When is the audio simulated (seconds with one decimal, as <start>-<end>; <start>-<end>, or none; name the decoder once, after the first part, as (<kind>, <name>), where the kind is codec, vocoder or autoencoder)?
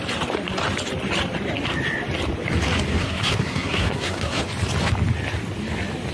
2.9-4.4 (codec, SNAC)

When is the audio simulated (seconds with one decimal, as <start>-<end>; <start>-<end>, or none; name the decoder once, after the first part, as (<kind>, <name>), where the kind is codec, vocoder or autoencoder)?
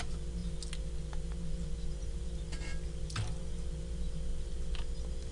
none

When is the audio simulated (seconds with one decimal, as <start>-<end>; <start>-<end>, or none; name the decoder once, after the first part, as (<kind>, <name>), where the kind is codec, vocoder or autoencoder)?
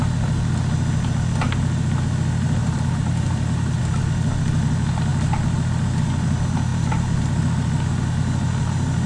2.6-3.8 (vocoder, BigVGAN v2)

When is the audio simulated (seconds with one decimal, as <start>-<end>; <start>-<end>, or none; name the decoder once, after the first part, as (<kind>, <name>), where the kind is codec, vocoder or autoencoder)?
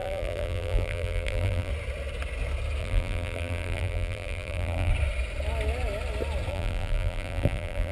0.0-1.7 (vocoder, BigVGAN v2); 2.8-4.9; 6.5-7.9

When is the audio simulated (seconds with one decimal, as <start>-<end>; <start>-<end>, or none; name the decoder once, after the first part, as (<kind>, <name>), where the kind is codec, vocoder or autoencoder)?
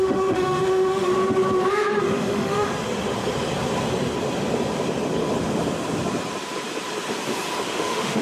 0.0-1.1 (autoencoder, DAC-VAE); 2.0-2.7; 7.6-8.2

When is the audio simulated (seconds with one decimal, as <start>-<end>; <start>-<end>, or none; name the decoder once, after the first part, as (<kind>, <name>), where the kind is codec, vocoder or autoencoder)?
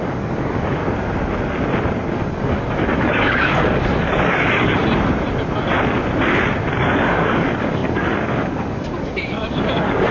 0.0-0.8 (codec, DAC); 2.1-4.8; 6.7-10.1